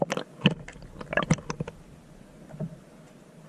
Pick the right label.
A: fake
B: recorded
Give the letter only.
B